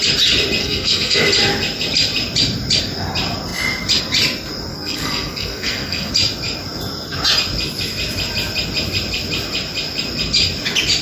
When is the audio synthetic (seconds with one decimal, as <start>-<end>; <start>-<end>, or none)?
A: 0.6-1.2; 4.7-6.1